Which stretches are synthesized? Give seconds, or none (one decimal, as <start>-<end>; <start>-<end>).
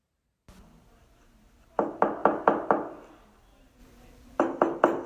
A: 3.8-4.4